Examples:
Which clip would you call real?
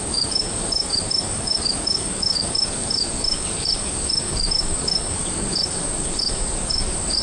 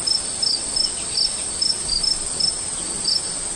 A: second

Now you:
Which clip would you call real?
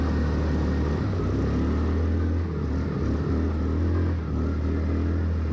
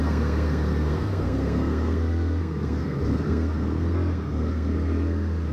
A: first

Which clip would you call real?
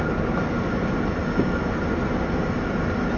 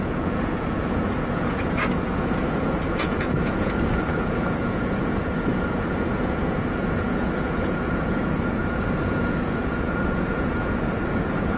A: first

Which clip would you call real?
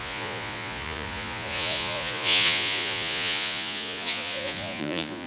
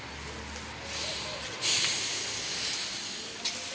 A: second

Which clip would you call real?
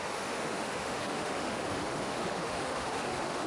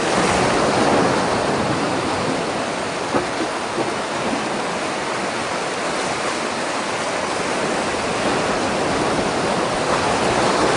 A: second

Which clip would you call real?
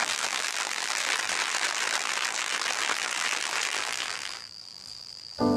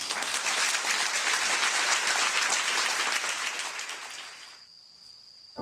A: second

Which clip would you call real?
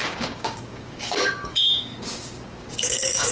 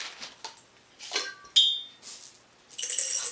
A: second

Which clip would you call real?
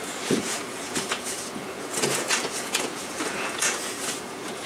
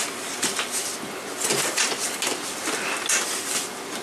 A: second